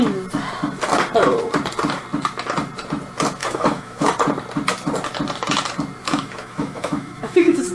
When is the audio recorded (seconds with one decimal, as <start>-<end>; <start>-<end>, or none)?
0.0-3.4; 4.1-6.0